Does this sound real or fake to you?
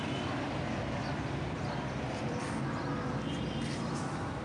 real